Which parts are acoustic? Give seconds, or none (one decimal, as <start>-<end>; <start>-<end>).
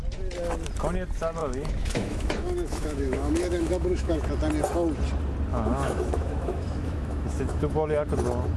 0.0-1.4; 4.3-5.5; 8.1-8.6